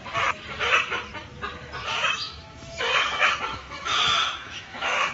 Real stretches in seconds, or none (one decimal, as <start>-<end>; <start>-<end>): 0.0-1.8